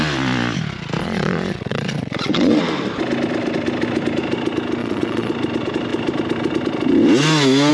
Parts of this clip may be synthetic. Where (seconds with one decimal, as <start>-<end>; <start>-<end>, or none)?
1.0-2.6; 4.8-5.3